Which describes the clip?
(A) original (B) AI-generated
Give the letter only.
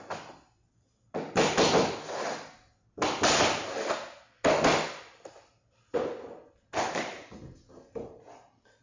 A